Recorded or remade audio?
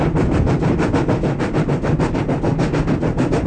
recorded